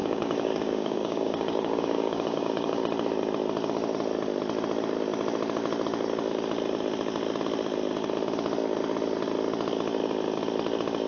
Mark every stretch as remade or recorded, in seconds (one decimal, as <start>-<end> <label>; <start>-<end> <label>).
0.0-2.8 remade; 2.8-11.1 recorded